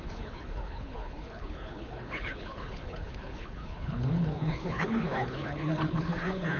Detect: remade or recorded remade